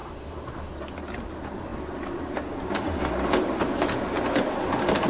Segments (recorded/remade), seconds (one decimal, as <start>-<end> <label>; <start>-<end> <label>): 0.0-0.7 remade; 0.7-5.1 recorded